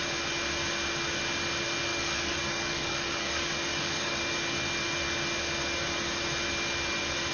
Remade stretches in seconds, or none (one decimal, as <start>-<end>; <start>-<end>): 1.9-4.2